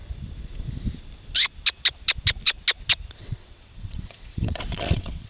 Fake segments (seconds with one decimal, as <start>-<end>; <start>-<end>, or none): 3.2-5.3